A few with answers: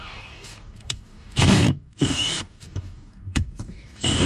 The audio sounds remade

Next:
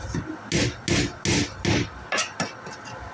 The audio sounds recorded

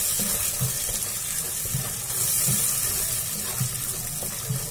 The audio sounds recorded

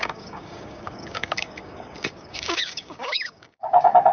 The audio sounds remade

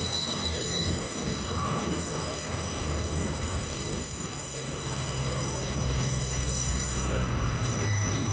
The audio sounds remade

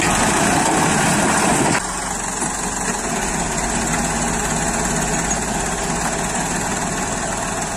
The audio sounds recorded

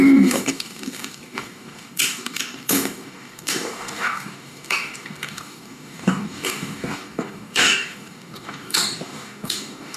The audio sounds remade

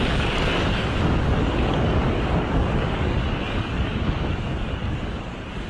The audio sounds remade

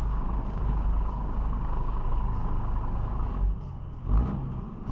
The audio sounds remade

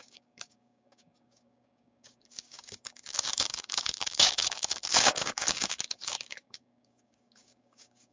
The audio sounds remade